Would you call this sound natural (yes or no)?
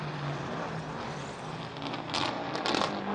yes